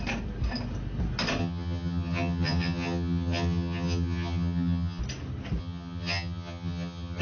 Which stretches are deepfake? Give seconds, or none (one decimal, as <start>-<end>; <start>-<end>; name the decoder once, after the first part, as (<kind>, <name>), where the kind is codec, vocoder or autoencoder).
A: 1.4-5.0 (vocoder, HiFi-GAN); 5.6-7.2